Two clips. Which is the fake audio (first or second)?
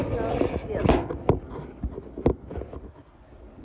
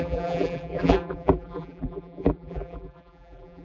second